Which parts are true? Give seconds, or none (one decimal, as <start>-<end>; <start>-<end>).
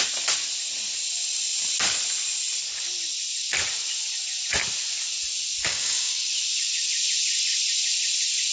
0.0-5.6; 6.3-8.5